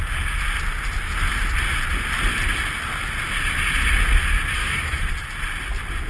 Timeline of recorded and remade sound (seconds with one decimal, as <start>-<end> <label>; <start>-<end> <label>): 0.0-4.6 recorded; 4.6-5.1 remade; 5.1-6.1 recorded